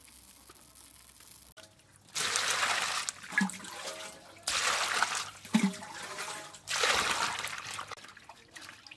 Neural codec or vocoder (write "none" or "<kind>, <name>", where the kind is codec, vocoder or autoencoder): none